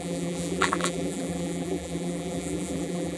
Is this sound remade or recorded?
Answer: remade